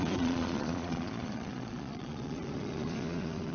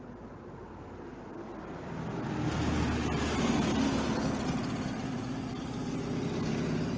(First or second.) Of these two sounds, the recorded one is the second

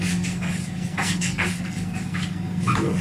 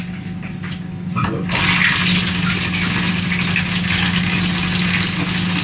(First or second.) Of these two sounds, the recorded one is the second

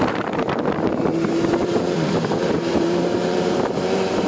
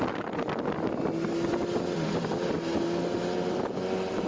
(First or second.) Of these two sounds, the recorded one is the second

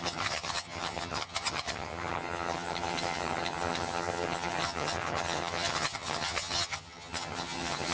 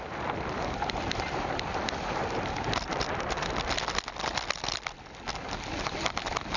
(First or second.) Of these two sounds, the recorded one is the second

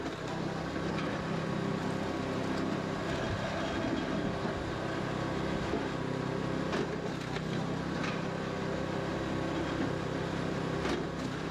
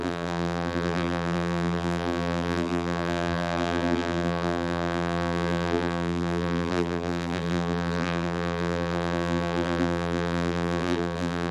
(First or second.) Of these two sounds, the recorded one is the first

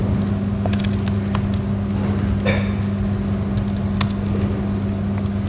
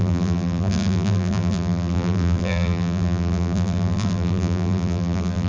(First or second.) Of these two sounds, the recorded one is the first